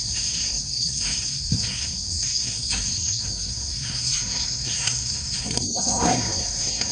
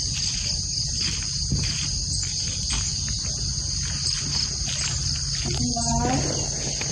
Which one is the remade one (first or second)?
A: first